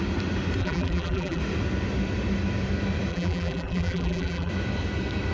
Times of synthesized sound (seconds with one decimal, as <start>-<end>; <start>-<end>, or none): 0.6-1.4; 3.1-4.5